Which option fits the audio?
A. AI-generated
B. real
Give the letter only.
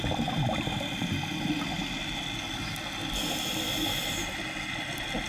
B